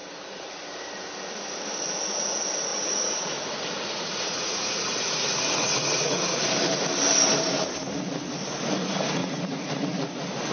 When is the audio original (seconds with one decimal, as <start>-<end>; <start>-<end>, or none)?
0.0-2.7; 6.4-9.2; 9.8-10.5